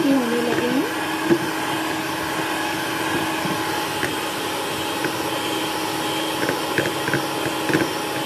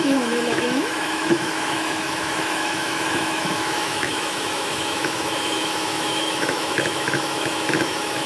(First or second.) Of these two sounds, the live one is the first